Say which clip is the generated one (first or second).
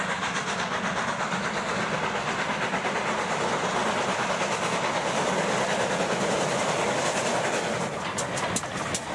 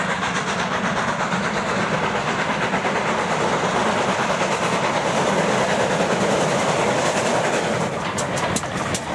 second